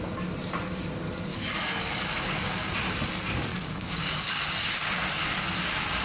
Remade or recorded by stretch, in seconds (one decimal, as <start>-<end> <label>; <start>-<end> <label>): 0.0-1.3 recorded; 1.3-2.7 remade; 2.7-3.5 recorded; 3.5-4.5 remade; 4.5-6.0 recorded